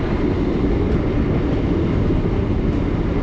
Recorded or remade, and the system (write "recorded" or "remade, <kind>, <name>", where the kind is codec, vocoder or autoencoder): recorded